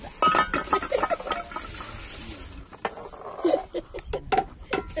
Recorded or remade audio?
recorded